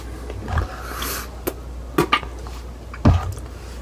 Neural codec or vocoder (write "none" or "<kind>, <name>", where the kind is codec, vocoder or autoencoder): none